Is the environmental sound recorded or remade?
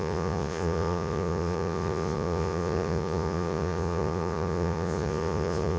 remade